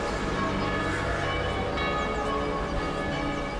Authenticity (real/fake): real